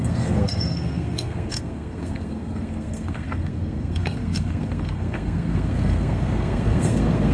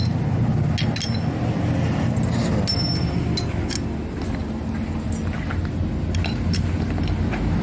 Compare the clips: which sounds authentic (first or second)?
second